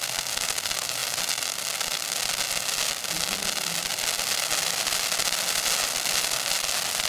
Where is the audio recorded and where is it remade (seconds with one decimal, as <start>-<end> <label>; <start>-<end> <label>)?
0.0-7.1 recorded